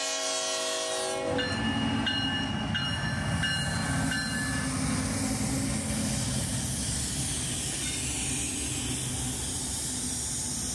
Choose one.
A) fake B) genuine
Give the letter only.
B